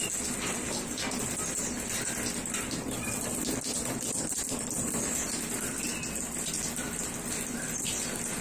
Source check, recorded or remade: recorded